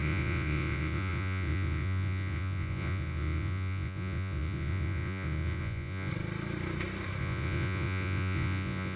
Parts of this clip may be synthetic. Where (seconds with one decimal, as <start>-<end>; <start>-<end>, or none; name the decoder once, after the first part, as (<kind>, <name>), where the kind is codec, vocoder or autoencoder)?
0.0-6.1 (vocoder, Vocos); 7.2-9.0